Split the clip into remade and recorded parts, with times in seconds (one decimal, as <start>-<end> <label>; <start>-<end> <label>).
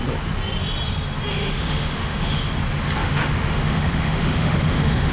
0.0-1.3 recorded; 1.3-2.5 remade; 2.5-3.0 recorded; 3.0-5.1 remade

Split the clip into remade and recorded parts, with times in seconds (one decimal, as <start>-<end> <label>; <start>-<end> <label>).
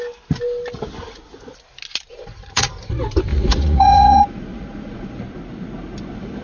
0.0-2.1 recorded; 2.1-2.7 remade; 2.7-3.3 recorded; 3.3-5.2 remade; 5.2-6.4 recorded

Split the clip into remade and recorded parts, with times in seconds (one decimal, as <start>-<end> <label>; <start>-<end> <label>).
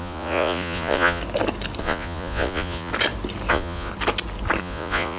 0.0-1.2 remade; 1.2-1.8 recorded; 1.8-2.9 remade; 2.9-3.5 recorded; 3.5-3.9 remade; 3.9-4.6 recorded; 4.6-5.2 remade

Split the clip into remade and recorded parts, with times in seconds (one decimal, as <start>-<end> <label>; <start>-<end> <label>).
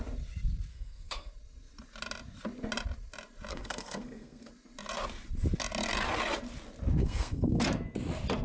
0.0-0.7 recorded; 0.7-1.3 remade; 1.3-3.5 recorded; 3.5-4.5 remade; 4.5-7.0 recorded; 7.0-7.6 remade; 7.6-8.4 recorded